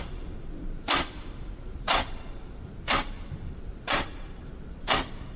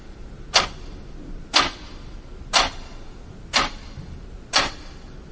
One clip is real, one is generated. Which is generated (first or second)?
first